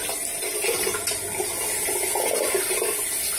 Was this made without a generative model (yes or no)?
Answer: yes